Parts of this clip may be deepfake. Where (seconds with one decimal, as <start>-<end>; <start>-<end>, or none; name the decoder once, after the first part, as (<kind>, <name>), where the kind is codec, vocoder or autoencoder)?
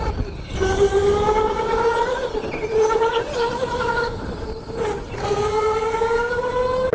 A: 5.2-6.3 (codec, SNAC)